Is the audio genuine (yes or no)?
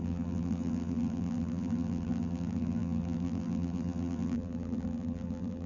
no